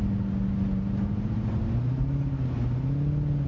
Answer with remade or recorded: recorded